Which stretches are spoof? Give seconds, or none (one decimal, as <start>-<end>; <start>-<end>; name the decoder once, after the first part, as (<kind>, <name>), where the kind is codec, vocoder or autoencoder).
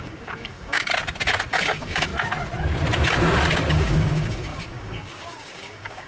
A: 0.0-0.9 (codec, DAC); 1.5-2.1; 3.7-6.1